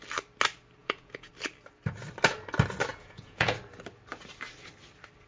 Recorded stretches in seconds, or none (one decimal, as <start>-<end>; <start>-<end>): 0.0-0.8; 1.3-2.9; 3.6-5.3